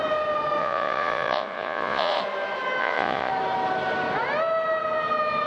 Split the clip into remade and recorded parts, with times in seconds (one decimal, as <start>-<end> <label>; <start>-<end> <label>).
0.0-0.6 recorded; 0.6-2.2 remade; 2.2-2.8 recorded; 2.8-3.3 remade; 3.3-5.5 recorded